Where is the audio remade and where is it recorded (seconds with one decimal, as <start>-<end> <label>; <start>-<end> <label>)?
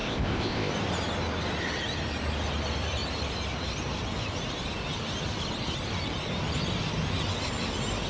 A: 0.0-0.7 remade; 0.7-8.1 recorded